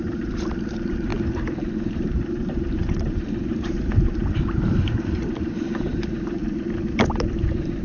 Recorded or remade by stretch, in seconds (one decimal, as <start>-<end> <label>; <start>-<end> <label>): 0.0-6.4 remade; 6.4-7.2 recorded; 7.2-7.8 remade